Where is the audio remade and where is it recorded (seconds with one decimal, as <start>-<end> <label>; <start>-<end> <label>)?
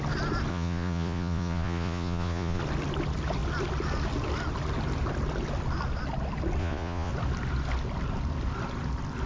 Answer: 0.0-0.5 recorded; 0.5-2.6 remade; 2.6-6.6 recorded; 6.6-7.1 remade; 7.1-9.3 recorded